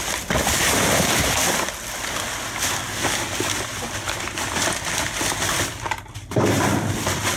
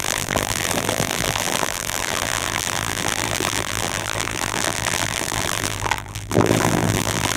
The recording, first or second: first